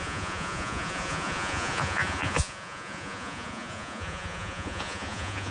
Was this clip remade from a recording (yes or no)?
yes